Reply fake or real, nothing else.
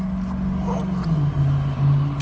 real